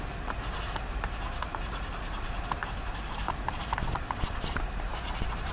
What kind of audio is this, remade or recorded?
remade